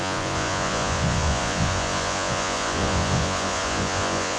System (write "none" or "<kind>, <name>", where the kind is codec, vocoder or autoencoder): vocoder, Vocos